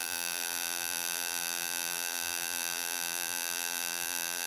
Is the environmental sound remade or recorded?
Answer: remade